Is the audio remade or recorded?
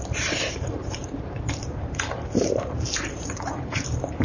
remade